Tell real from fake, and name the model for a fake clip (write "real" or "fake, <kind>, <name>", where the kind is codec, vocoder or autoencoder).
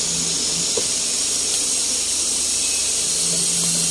real